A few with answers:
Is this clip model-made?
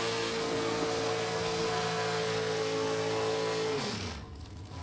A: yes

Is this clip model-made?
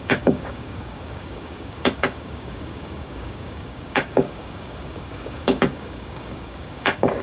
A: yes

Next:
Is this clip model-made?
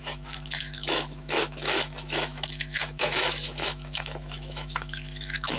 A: yes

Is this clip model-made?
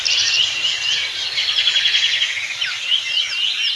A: no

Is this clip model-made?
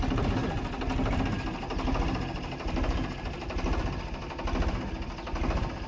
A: no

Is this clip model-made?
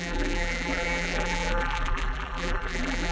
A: yes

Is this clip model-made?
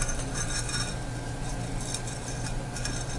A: no